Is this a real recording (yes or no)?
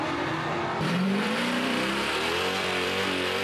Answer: no